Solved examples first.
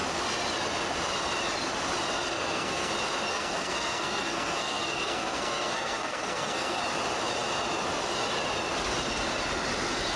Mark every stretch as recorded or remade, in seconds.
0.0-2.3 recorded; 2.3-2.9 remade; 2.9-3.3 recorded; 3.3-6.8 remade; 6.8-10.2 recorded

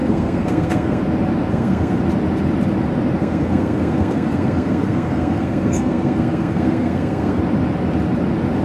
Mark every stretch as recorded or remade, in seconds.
0.0-1.0 remade; 1.0-1.5 recorded; 1.5-2.0 remade; 2.0-3.2 recorded; 3.2-7.4 remade; 7.4-8.6 recorded

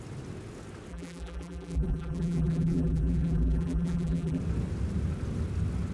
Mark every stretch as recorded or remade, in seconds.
0.0-0.9 recorded; 0.9-4.4 remade; 4.4-5.9 recorded

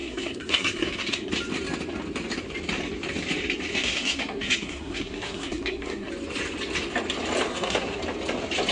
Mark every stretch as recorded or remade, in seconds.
0.0-1.3 remade; 1.3-3.7 recorded; 3.7-6.1 remade; 6.1-7.5 recorded; 7.5-8.0 remade; 8.0-8.7 recorded

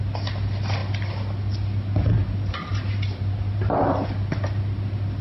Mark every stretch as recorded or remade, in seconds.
0.0-5.2 recorded

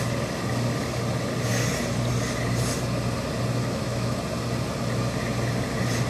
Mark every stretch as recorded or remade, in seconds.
0.0-3.6 recorded; 3.6-4.2 remade; 4.2-6.1 recorded